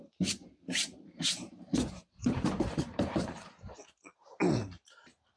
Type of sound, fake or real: fake